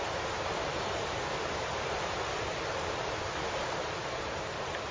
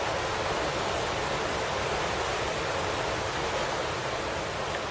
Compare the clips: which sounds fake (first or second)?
first